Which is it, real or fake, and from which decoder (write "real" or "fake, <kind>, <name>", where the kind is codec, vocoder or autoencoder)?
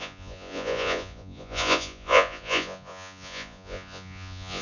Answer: fake, vocoder, Vocos